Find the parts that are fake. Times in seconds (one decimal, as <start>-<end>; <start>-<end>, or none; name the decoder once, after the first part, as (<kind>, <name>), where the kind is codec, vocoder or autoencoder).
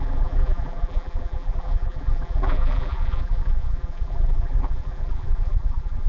0.0-6.1 (vocoder, BigVGAN v2)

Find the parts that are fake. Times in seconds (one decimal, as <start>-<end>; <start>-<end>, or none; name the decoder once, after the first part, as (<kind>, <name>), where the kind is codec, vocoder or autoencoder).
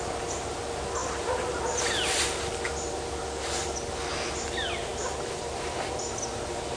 none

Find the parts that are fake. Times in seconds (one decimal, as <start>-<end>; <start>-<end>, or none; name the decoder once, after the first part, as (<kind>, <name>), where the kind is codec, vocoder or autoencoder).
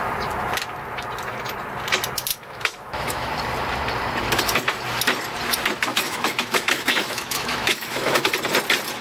2.3-3.3 (autoencoder, DAC-VAE); 5.9-8.3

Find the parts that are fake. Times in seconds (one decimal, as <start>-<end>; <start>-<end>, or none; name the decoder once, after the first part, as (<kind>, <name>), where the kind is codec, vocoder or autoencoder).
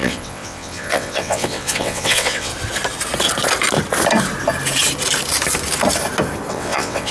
0.0-2.5 (vocoder, WaveNeXt); 6.5-7.1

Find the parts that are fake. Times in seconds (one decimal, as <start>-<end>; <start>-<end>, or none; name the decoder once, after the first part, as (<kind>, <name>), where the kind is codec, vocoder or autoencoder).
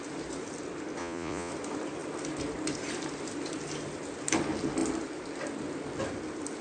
1.0-1.5 (vocoder, Vocos)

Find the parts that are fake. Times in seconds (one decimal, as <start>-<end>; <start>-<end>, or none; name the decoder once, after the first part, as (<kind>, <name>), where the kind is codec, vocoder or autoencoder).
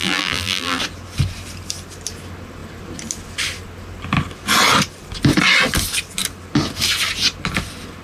0.0-0.8 (vocoder, BigVGAN v2)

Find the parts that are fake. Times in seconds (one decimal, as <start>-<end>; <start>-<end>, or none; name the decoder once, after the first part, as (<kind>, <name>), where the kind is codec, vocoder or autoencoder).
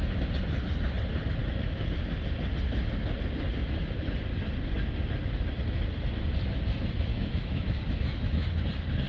1.4-2.1 (autoencoder, DAC-VAE); 7.1-8.6